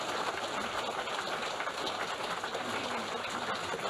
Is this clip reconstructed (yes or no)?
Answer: no